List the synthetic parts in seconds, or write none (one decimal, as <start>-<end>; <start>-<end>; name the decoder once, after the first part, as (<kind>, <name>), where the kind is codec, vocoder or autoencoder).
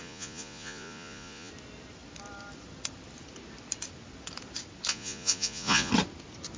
0.0-1.5 (vocoder, Vocos); 4.9-5.9